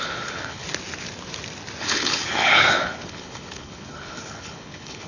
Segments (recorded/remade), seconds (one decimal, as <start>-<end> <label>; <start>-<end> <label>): 0.0-0.6 remade; 0.6-1.8 recorded; 1.8-5.1 remade